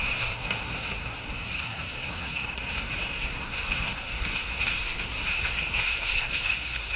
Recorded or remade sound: remade